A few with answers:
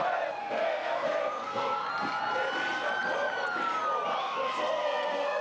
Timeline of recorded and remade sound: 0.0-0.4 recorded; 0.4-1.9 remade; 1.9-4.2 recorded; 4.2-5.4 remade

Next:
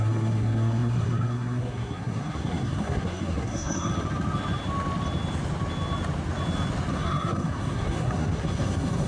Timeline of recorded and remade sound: 0.0-3.9 remade; 3.9-6.9 recorded; 6.9-9.1 remade